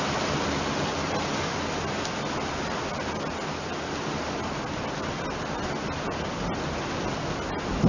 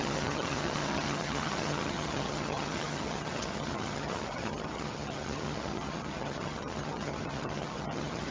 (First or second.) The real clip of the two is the first